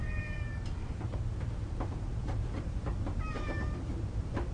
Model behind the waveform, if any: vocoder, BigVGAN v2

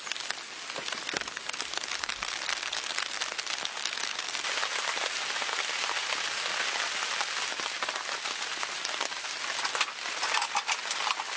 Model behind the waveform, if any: none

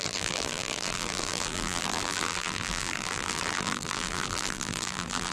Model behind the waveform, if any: vocoder, BigVGAN v2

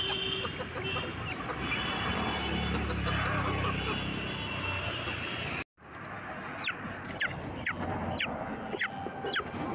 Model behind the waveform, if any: none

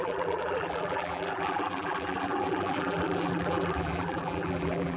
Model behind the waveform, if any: vocoder, BigVGAN v2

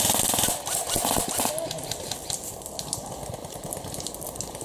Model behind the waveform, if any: none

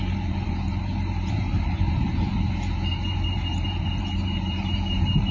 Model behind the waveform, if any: vocoder, BigVGAN v2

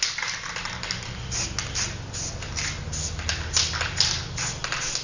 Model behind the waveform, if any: none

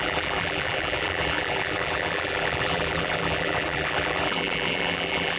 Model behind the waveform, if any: vocoder, BigVGAN v2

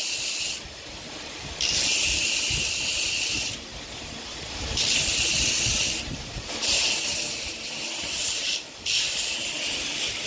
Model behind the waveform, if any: none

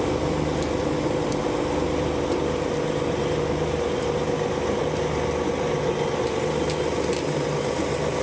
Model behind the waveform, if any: none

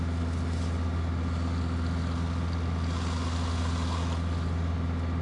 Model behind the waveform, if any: none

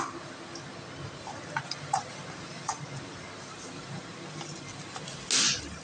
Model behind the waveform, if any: none